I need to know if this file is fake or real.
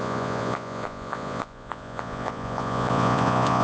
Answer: fake